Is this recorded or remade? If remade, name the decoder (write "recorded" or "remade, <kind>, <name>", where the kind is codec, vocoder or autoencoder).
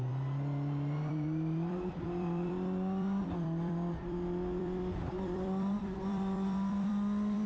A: remade, vocoder, BigVGAN v2